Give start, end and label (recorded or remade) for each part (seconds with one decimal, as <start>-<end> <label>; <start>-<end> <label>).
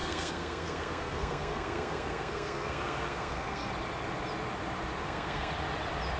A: 0.0-3.7 remade; 3.7-5.0 recorded; 5.0-5.5 remade; 5.5-6.2 recorded